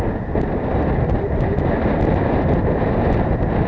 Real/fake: real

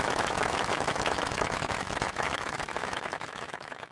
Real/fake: fake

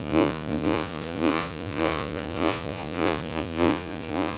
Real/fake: fake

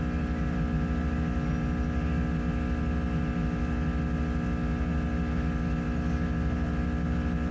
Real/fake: real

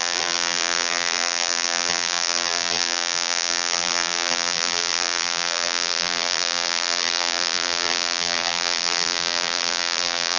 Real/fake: fake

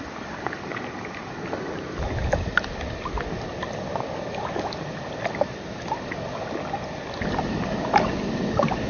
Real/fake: real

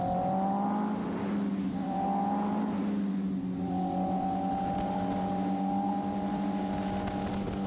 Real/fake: real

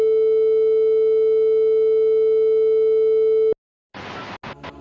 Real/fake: real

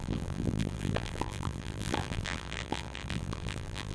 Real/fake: fake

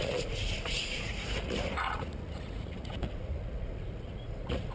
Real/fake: fake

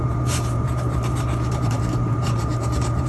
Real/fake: fake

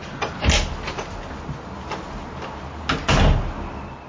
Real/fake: real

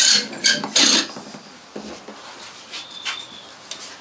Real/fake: real